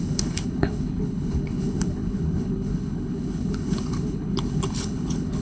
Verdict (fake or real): fake